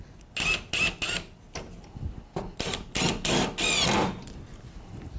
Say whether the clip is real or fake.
real